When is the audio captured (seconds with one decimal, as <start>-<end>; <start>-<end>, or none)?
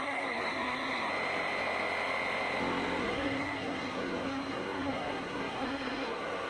1.1-3.0